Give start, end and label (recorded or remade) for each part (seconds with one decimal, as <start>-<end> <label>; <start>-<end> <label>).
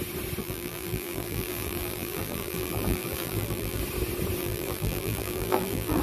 0.0-0.4 recorded; 0.4-3.8 remade; 3.8-4.4 recorded; 4.4-6.0 remade